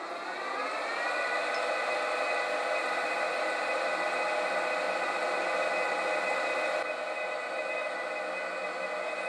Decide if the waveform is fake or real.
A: real